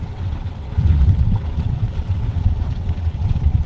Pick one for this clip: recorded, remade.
remade